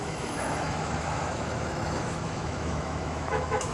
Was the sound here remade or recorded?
remade